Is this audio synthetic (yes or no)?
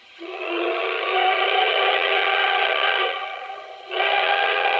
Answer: yes